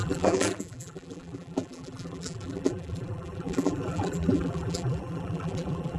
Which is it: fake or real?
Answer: fake